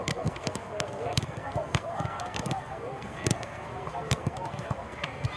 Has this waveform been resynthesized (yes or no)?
yes